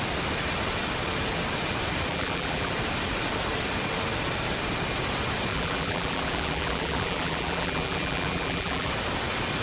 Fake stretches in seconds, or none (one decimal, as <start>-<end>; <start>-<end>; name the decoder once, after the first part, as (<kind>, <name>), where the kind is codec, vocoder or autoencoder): 2.1-2.7 (vocoder, BigVGAN v2); 5.5-8.9